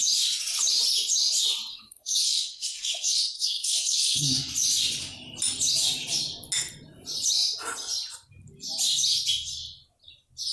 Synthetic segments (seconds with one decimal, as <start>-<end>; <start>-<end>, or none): 1.7-4.4

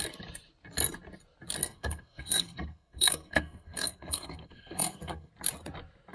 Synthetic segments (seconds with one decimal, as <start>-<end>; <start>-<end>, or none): 1.6-5.3

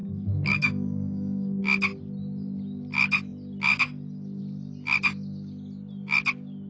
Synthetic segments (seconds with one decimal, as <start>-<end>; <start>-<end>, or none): 0.0-1.6

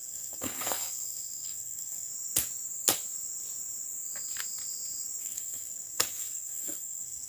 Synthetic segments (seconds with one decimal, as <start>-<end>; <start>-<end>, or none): 0.0-2.1; 5.2-7.3